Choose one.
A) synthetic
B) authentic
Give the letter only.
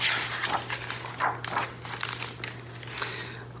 B